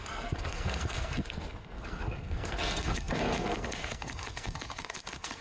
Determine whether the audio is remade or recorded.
remade